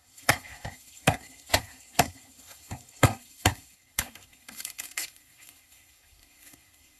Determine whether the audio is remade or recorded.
remade